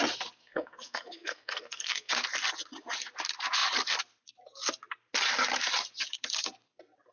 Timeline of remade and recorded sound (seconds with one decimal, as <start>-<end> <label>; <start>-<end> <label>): 0.0-0.4 recorded; 0.4-2.1 remade; 2.1-7.1 recorded